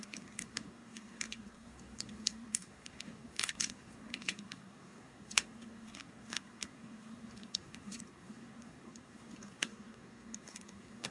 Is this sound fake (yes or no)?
yes